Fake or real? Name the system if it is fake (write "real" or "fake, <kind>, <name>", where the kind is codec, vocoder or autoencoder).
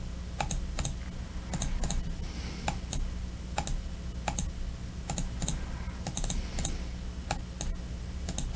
real